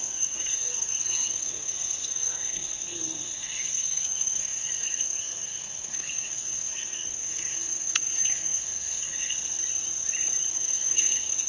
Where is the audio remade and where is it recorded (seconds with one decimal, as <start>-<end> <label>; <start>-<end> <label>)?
0.0-9.6 remade; 9.6-10.5 recorded; 10.5-11.5 remade